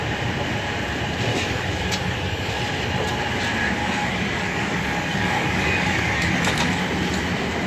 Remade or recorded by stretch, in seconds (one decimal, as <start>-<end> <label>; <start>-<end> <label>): 0.0-1.3 recorded; 1.3-2.5 remade; 2.5-3.8 recorded; 3.8-6.8 remade; 6.8-7.7 recorded